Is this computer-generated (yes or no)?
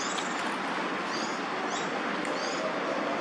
no